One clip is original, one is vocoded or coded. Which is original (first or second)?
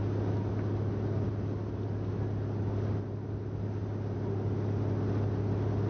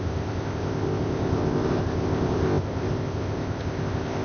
first